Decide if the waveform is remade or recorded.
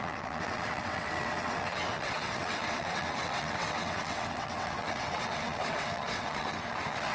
remade